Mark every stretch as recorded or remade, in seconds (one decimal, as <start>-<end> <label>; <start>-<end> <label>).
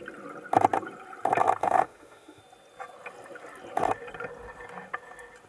0.0-1.6 recorded; 1.6-2.4 remade; 2.4-5.5 recorded